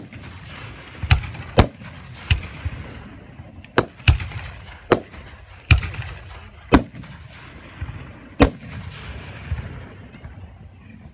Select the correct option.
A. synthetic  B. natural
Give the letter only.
B